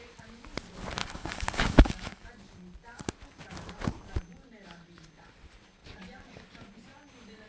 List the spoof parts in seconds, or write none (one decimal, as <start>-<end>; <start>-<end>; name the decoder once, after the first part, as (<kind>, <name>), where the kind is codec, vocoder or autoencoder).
1.0-2.3 (codec, DAC)